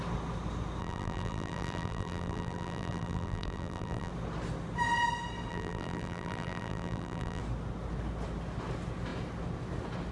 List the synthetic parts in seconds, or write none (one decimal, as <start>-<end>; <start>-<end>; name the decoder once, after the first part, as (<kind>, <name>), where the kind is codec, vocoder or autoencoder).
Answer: 0.8-4.1 (vocoder, BigVGAN v2); 5.5-7.4